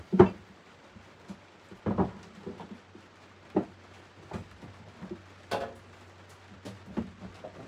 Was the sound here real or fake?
real